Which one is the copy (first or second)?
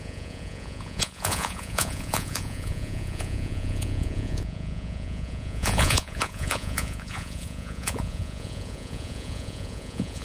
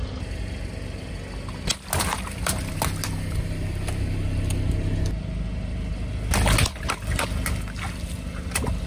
first